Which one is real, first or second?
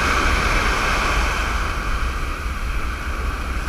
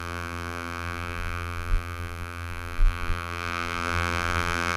first